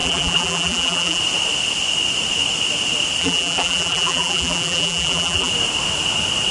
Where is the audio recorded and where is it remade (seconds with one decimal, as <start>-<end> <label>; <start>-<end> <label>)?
0.0-1.2 remade; 1.2-3.2 recorded; 3.2-5.5 remade; 5.5-6.5 recorded